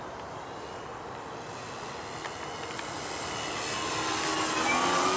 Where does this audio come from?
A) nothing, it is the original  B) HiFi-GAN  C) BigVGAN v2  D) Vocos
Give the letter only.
A